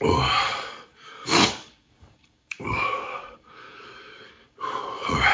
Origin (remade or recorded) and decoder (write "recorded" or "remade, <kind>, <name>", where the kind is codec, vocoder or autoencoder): remade, codec, DAC